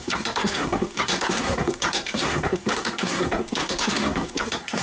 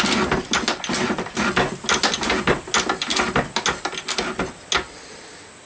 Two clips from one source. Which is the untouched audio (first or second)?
second